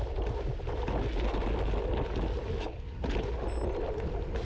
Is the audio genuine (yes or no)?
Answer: yes